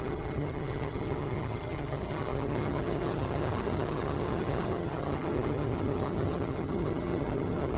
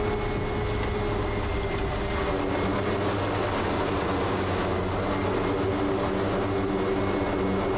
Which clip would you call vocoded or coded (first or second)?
first